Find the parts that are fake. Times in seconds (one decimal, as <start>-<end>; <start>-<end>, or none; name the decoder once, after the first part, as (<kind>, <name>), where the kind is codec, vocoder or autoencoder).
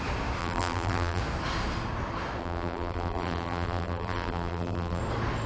0.4-1.2 (vocoder, BigVGAN v2); 2.4-5.0